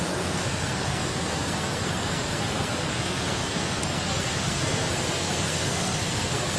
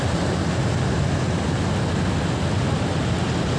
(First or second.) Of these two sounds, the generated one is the first